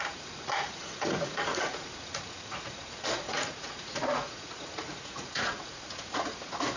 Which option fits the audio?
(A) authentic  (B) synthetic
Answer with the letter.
B